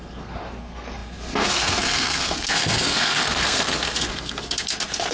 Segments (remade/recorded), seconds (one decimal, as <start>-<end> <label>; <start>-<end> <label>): 0.0-5.1 remade